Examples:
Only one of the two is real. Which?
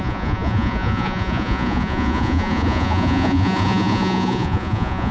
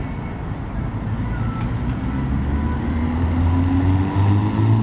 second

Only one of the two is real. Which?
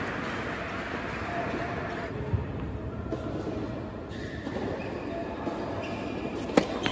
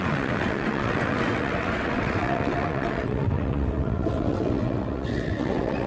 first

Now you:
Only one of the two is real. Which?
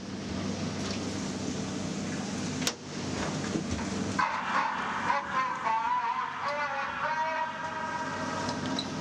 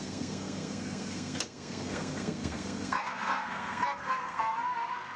first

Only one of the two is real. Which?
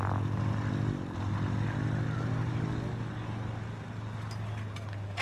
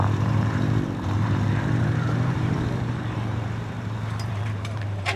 first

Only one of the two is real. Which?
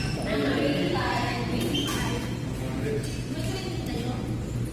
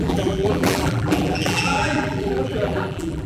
first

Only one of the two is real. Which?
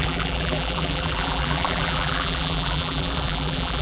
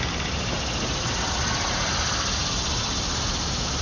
second